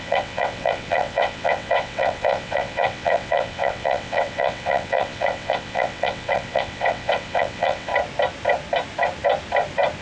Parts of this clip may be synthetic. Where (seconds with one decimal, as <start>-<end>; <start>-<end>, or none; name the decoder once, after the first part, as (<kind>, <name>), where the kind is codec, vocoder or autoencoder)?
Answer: 0.0-7.9 (vocoder, WaveNeXt)